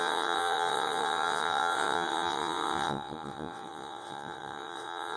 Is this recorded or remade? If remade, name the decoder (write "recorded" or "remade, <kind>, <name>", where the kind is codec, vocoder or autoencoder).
remade, vocoder, WaveNeXt